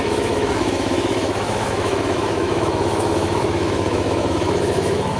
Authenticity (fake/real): fake